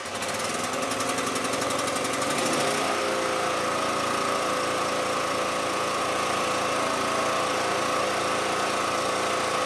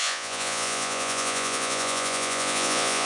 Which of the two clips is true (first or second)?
first